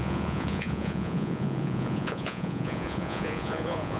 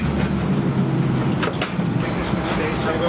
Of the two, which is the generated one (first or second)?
first